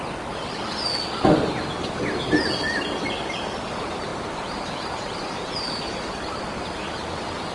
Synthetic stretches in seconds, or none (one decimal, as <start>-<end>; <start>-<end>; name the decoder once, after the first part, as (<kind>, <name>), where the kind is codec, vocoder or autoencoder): 4.1-7.1 (vocoder, BigVGAN v2)

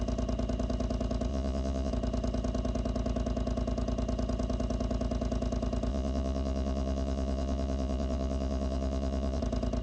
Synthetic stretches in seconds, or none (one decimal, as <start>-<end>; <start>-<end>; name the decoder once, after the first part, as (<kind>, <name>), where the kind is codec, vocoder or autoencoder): 1.3-1.9 (vocoder, Vocos); 5.9-9.4

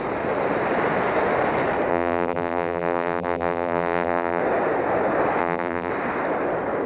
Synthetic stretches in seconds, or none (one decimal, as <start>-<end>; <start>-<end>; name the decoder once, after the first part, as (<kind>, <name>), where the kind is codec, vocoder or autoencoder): 1.9-4.4 (vocoder, BigVGAN v2); 5.4-5.9

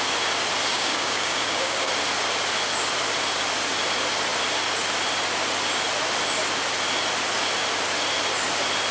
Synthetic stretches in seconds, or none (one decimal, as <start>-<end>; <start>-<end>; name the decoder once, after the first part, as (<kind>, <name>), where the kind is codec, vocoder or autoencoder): 0.7-1.9 (codec, DAC)

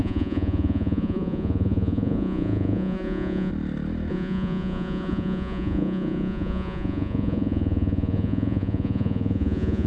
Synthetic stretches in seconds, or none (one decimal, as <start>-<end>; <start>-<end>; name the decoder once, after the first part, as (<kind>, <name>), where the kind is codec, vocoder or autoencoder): 0.0-3.5 (vocoder, Vocos); 4.1-9.9

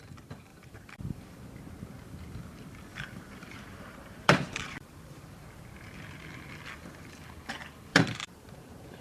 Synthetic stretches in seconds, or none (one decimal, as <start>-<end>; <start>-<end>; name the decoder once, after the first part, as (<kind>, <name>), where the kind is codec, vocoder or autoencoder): 0.5-1.2 (vocoder, BigVGAN v2); 2.9-5.6; 7.9-9.0

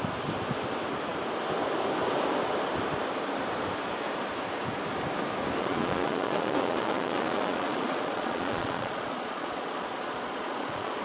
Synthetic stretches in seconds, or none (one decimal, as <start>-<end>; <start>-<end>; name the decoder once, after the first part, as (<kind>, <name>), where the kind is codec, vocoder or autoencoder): 5.6-11.0 (vocoder, Vocos)

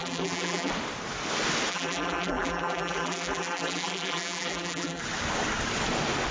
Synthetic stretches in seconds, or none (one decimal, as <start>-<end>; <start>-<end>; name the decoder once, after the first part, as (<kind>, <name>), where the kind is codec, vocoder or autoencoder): 0.0-0.7 (vocoder, BigVGAN v2); 1.7-5.0